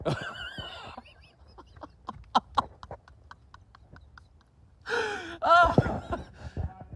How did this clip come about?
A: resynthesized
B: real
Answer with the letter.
B